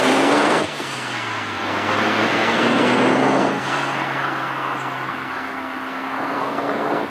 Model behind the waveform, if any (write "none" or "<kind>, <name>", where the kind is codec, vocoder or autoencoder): codec, SNAC